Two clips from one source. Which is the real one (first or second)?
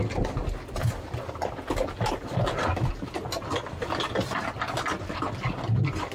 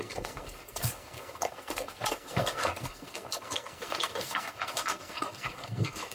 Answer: first